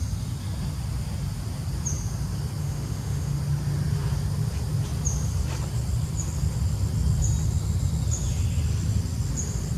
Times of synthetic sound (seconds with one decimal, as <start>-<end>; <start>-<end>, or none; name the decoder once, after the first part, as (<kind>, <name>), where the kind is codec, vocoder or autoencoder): 2.6-3.4 (autoencoder, DAC-VAE)